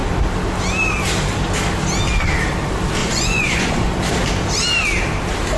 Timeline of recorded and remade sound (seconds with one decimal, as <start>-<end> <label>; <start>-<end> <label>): 0.0-3.0 recorded; 3.0-3.9 remade; 3.9-5.6 recorded